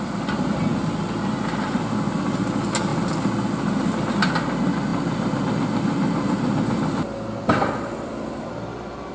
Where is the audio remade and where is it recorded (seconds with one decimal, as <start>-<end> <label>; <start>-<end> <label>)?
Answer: 0.0-9.1 recorded